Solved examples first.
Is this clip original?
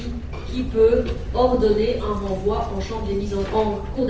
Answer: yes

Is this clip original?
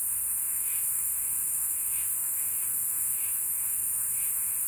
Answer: no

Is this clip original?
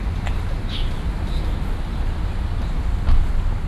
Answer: yes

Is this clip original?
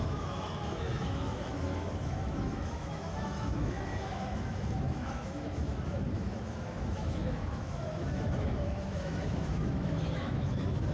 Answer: no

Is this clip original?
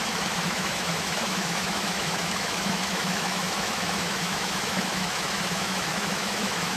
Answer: no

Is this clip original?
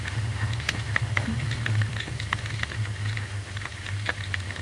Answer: no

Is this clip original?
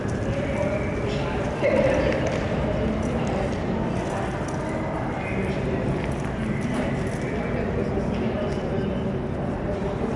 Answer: yes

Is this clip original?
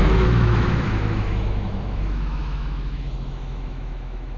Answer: no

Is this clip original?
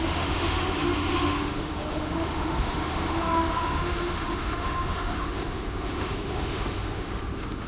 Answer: no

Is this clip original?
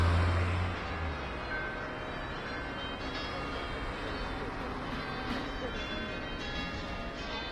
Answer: yes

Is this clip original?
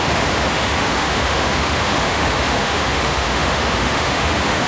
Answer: no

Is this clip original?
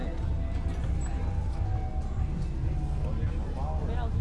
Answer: yes